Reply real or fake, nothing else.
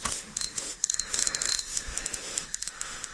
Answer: fake